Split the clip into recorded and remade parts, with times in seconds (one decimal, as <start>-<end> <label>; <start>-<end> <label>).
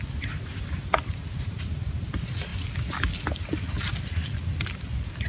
0.0-5.3 recorded